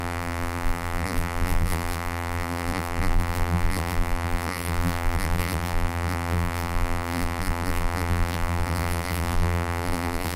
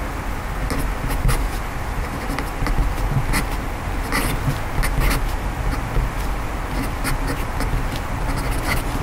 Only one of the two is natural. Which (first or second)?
second